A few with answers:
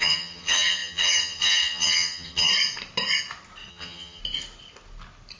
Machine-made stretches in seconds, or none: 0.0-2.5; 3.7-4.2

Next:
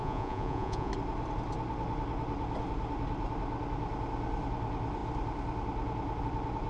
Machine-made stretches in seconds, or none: 0.0-0.9

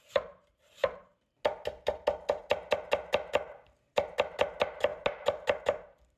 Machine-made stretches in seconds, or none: 0.4-1.2

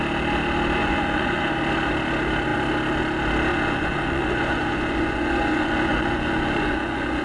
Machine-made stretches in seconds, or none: 0.8-1.4; 3.5-7.2

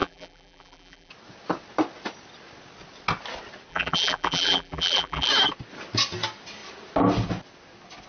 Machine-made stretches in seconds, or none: 0.0-1.1; 3.7-5.3

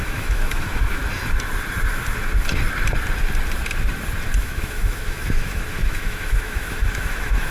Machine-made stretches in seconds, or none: 0.0-1.0; 4.4-7.5

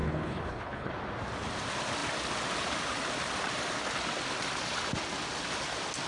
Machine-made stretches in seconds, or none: 0.0-0.9

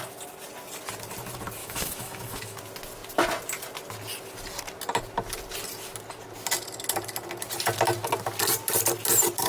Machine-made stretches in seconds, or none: 1.6-2.6